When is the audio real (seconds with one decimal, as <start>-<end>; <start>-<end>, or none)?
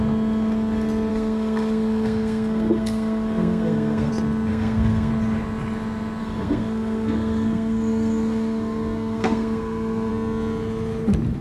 0.0-1.1; 4.1-4.5; 5.1-6.2; 10.1-11.4